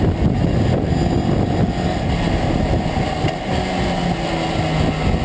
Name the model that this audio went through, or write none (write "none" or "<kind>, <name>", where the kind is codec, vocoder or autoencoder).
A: none